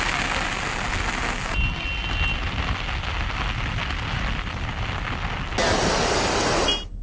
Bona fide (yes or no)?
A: yes